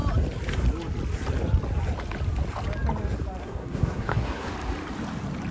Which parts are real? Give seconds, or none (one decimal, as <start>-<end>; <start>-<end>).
0.0-3.4; 4.5-5.5